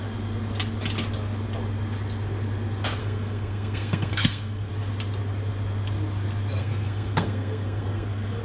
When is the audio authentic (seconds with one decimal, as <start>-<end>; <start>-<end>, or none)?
0.0-3.0; 4.7-6.6